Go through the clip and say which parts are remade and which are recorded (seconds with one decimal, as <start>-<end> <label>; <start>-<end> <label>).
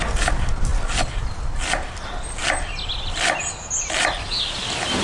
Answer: 0.0-5.0 recorded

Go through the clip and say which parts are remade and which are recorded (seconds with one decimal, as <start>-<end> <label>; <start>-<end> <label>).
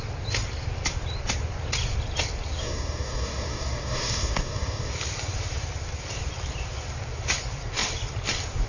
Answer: 0.0-2.6 recorded; 2.6-4.9 remade; 4.9-8.7 recorded